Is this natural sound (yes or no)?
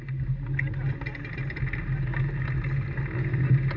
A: yes